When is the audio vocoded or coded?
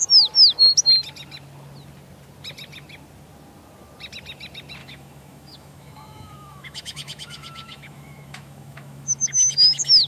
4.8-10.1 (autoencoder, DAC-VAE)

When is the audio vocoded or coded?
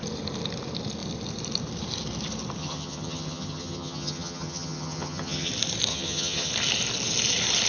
2.6-5.5 (vocoder, HiFi-GAN); 5.9-6.5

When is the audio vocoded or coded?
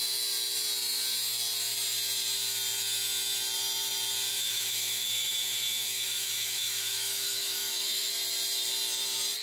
4.3-8.1 (autoencoder, DAC-VAE)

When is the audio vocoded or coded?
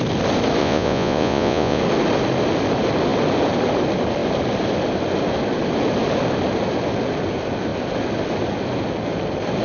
0.6-1.8 (vocoder, Vocos)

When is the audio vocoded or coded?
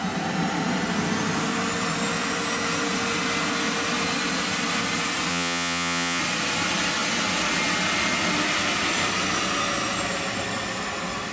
5.3-6.2 (vocoder, Vocos)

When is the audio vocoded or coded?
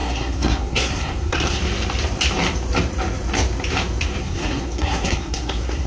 0.0-1.6 (codec, SNAC); 4.2-5.9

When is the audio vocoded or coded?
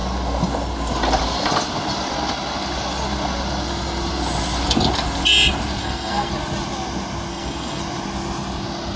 5.8-6.3 (codec, SNAC); 7.3-7.8